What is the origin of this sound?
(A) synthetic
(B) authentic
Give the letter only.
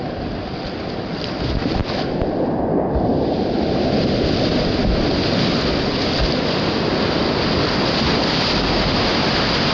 B